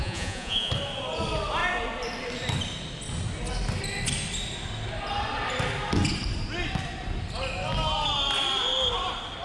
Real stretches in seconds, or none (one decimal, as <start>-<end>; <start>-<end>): 0.7-9.4